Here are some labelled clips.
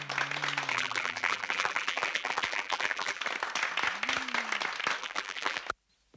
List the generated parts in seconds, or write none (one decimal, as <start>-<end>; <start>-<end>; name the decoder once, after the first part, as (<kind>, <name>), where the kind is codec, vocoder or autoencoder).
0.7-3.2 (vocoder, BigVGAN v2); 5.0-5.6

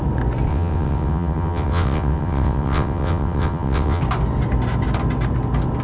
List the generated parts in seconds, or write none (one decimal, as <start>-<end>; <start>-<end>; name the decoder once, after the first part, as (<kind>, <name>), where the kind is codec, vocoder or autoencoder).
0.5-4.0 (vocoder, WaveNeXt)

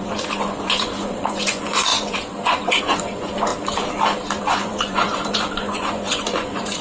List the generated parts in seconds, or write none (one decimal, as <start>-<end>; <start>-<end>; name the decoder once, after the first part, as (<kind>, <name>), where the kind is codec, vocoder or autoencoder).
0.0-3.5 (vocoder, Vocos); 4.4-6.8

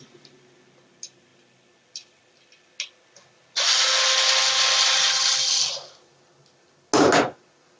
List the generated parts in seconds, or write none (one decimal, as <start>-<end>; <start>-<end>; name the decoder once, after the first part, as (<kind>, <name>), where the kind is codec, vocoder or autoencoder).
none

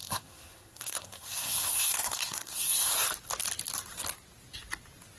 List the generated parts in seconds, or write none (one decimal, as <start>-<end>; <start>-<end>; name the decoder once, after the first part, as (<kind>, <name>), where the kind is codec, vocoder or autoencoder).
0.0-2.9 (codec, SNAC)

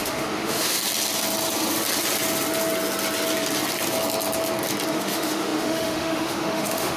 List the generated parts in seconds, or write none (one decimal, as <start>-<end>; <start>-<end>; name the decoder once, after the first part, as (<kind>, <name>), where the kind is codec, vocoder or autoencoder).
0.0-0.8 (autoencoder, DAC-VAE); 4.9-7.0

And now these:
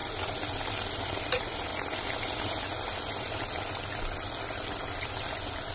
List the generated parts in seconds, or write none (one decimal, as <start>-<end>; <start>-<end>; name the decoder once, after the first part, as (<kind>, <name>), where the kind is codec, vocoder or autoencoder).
none

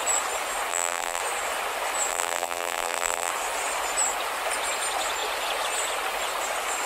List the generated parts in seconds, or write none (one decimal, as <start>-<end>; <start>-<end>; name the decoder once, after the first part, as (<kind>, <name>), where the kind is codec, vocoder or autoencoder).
0.7-1.2 (vocoder, BigVGAN v2); 2.1-3.3